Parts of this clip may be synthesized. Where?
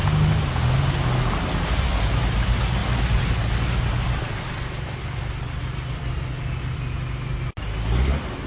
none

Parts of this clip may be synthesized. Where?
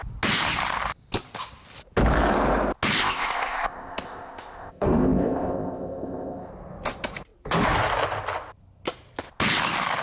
3.0-6.5 (codec, ZipCodec)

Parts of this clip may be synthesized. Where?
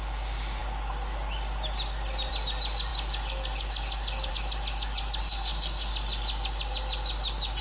5.2-5.9 (autoencoder, DAC-VAE)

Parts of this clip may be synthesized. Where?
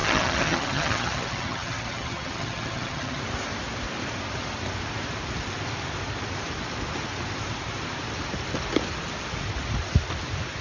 0.0-3.2 (vocoder, HiFi-GAN)